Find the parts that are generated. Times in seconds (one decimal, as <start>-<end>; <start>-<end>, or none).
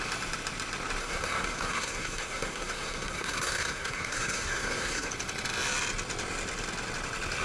1.0-5.1